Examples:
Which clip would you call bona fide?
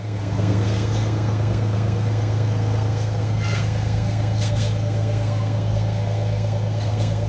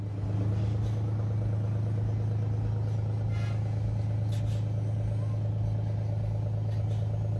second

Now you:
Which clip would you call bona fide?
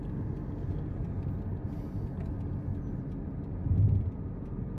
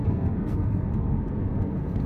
first